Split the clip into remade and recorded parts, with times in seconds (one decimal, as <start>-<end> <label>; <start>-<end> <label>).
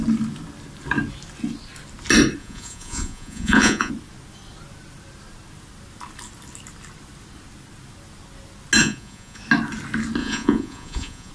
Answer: 0.0-2.4 recorded; 2.4-3.9 remade; 3.9-8.8 recorded; 8.8-9.4 remade; 9.4-10.2 recorded; 10.2-11.3 remade